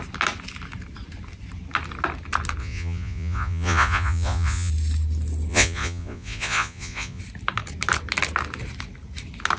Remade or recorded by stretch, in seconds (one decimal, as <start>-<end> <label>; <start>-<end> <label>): 0.0-2.6 recorded; 2.6-4.7 remade; 4.7-5.5 recorded; 5.5-7.2 remade; 7.2-9.6 recorded